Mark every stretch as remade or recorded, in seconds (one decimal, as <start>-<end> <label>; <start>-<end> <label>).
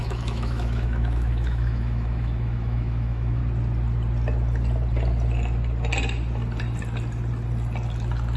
0.0-3.4 remade; 3.4-8.4 recorded